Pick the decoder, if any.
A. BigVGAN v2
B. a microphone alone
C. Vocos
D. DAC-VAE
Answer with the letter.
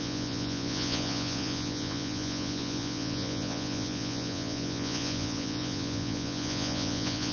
C